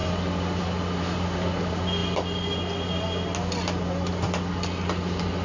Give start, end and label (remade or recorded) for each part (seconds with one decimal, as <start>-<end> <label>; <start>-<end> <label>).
0.0-5.4 recorded